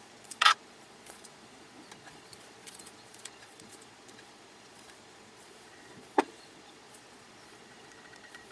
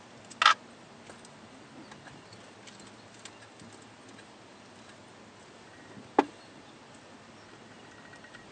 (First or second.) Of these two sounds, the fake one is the first